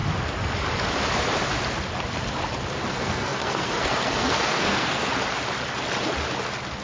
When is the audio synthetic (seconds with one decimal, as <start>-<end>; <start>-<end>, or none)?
2.9-5.1